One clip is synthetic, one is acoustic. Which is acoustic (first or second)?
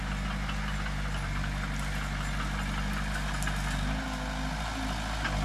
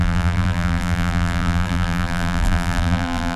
first